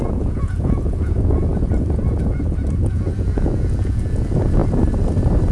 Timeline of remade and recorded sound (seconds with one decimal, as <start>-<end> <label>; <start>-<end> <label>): 0.0-1.5 remade; 1.5-2.2 recorded; 2.2-4.6 remade; 4.6-5.5 recorded